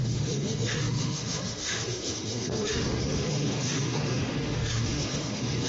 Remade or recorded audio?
remade